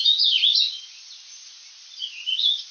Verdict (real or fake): real